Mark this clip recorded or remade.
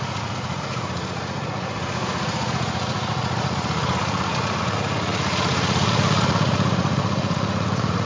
remade